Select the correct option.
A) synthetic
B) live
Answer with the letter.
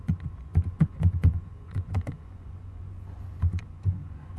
A